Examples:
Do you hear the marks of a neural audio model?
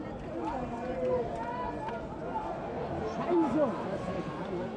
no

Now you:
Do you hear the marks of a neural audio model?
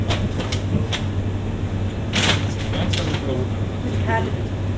no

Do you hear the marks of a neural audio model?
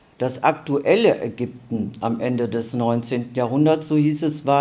no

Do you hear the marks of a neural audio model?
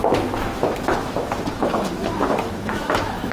yes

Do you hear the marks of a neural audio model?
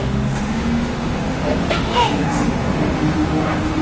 yes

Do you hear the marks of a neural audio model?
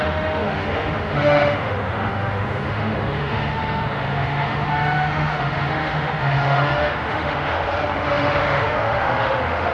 yes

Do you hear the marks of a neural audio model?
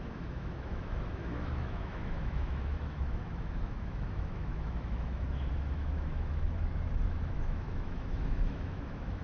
yes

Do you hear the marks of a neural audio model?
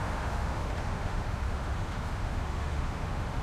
yes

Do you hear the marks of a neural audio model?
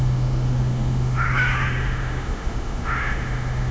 yes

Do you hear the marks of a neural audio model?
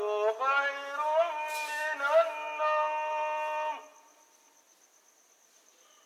no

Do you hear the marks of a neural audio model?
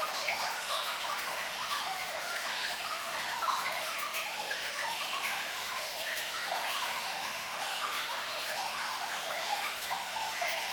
yes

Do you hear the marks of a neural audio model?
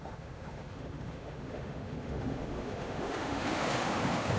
yes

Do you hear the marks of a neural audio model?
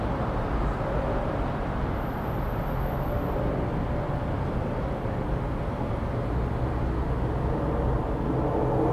no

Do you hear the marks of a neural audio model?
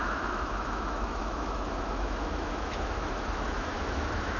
yes